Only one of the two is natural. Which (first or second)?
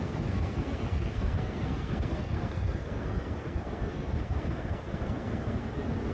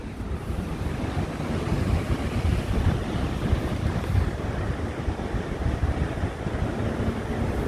second